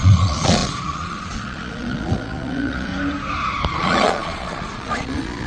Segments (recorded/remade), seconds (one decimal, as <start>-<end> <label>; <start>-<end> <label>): 0.0-2.9 remade; 2.9-3.7 recorded; 3.7-5.5 remade